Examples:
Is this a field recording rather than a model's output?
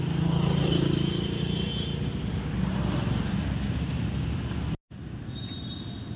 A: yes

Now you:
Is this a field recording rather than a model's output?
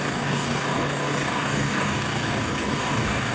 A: no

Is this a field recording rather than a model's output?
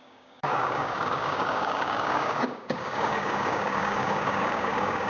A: no